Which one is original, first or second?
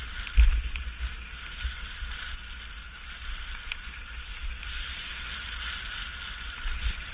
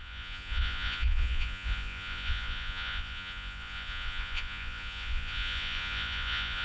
first